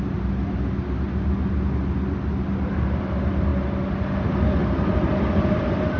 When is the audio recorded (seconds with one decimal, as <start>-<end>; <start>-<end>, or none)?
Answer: 0.0-6.0